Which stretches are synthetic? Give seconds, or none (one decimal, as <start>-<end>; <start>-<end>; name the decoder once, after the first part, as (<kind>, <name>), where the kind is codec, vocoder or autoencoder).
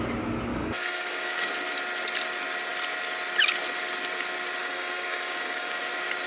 0.5-1.5 (codec, DAC); 4.6-5.8